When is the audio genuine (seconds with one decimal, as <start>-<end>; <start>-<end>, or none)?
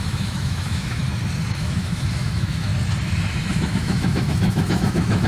1.0-1.5; 2.7-3.5